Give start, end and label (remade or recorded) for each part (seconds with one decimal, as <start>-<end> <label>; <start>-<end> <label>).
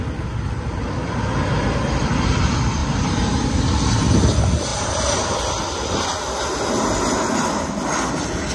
0.0-2.8 recorded; 2.8-3.5 remade; 3.5-4.7 recorded; 4.7-5.2 remade; 5.2-8.5 recorded